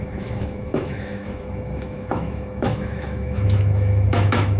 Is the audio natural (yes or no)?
no